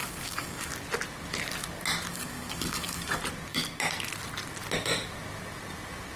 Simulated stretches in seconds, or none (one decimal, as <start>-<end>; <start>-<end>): 0.0-0.7; 2.1-3.2